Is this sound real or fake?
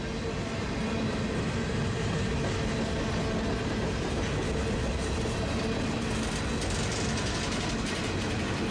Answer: real